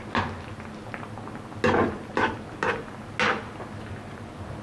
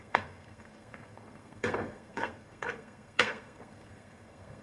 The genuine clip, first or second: first